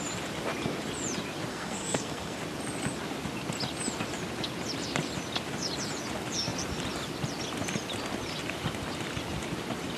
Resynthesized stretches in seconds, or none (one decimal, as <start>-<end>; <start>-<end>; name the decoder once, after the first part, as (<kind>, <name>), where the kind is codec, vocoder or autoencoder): 1.5-2.4 (codec, SNAC)